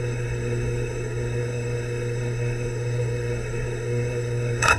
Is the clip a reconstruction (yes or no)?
yes